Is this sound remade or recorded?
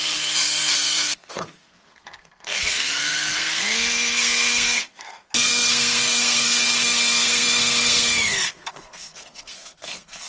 remade